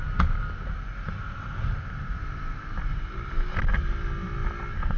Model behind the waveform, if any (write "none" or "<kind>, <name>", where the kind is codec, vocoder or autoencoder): none